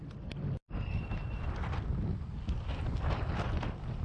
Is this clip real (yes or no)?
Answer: yes